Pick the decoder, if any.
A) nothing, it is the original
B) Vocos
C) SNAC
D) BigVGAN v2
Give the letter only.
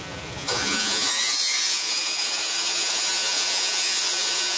B